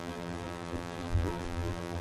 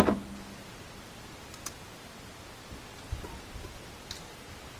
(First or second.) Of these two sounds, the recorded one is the second